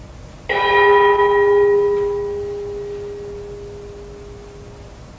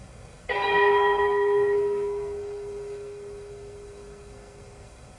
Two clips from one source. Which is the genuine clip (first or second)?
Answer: first